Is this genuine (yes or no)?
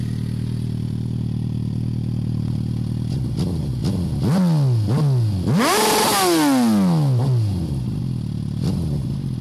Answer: yes